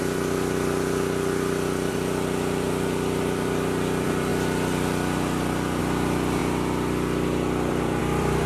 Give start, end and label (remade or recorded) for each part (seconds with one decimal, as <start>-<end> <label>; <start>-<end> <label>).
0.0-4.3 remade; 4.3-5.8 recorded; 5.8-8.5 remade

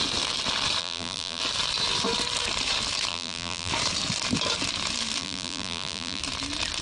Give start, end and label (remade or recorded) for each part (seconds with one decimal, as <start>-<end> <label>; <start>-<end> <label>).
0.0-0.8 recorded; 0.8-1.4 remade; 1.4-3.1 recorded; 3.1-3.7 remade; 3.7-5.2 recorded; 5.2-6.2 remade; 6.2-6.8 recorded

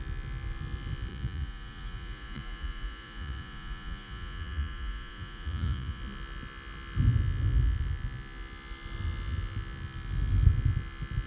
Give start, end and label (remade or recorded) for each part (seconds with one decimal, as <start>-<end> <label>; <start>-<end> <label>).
0.0-1.1 recorded; 1.1-6.0 remade; 6.0-11.3 recorded

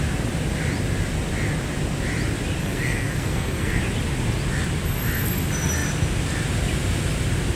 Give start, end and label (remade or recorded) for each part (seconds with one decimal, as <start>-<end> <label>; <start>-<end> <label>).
0.0-2.6 recorded; 2.6-3.8 remade; 3.8-7.6 recorded